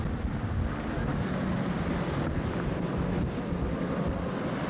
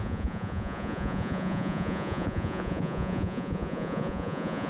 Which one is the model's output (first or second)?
second